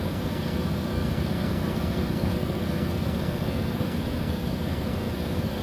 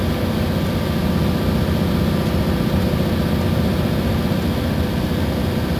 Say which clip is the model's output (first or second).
first